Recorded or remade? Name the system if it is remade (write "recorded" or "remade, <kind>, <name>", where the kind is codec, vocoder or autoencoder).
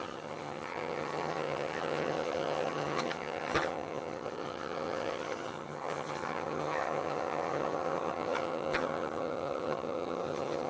remade, vocoder, HiFi-GAN